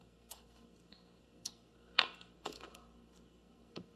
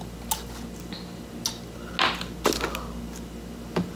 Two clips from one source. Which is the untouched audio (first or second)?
second